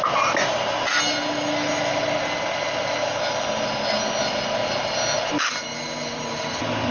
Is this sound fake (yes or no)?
no